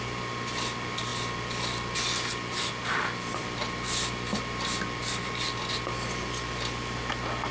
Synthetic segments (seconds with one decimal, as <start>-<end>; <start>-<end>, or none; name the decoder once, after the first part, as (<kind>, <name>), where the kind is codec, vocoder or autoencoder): none